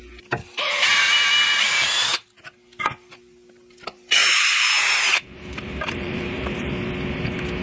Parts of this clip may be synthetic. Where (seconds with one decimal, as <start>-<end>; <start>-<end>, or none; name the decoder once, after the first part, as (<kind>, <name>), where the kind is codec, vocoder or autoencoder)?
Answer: 0.9-2.2 (vocoder, BigVGAN v2); 4.2-6.7